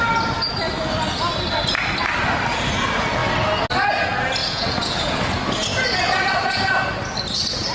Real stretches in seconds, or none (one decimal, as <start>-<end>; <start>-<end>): 0.0-4.4; 5.3-7.7